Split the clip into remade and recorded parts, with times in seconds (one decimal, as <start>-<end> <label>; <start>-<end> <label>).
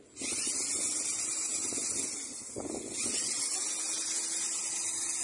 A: 0.0-5.2 recorded